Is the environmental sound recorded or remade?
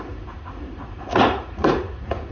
remade